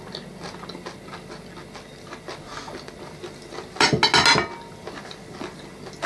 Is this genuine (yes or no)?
yes